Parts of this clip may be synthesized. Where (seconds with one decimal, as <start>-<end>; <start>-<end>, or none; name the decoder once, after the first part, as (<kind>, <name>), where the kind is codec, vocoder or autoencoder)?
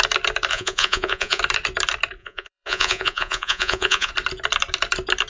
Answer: 0.5-1.4 (vocoder, Vocos); 2.2-4.1